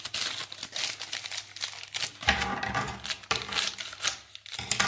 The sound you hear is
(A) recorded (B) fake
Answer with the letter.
A